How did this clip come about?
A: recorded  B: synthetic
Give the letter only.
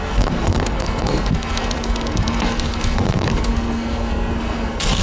B